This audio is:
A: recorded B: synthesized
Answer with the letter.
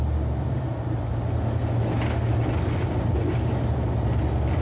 A